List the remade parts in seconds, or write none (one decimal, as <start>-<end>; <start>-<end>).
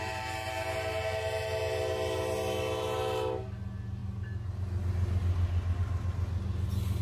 none